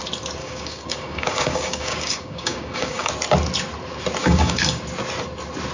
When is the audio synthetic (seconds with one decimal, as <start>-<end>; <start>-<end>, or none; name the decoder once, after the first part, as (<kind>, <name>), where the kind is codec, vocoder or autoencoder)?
0.4-3.1 (codec, DAC); 4.2-4.8